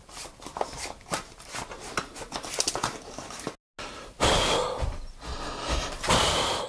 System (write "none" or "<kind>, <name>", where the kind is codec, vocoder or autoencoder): none